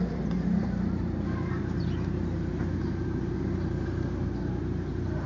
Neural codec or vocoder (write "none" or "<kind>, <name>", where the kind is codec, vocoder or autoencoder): none